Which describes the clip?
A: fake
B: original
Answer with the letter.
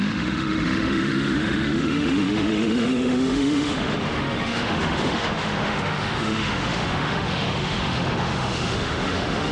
A